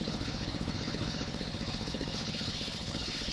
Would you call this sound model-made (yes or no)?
yes